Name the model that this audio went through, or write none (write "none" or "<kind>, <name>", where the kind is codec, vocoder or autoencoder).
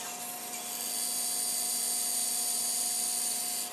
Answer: none